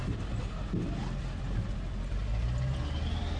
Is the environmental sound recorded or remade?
recorded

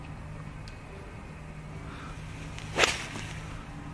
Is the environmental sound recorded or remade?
recorded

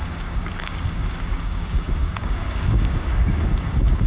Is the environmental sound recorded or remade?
remade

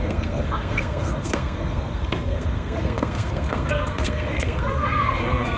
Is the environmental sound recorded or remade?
remade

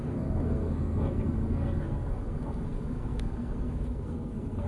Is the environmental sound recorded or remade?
remade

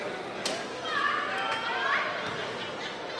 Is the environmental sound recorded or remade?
recorded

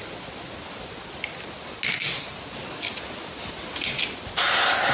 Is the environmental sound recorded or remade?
recorded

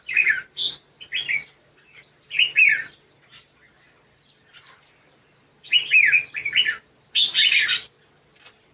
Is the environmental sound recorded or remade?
recorded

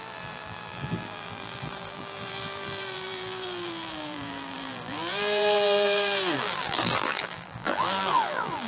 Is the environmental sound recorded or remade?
remade